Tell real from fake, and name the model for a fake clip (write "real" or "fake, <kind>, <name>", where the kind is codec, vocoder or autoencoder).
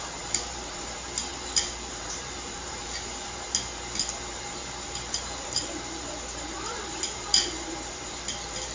fake, vocoder, BigVGAN v2